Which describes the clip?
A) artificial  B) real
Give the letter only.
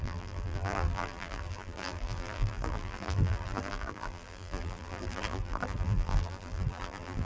A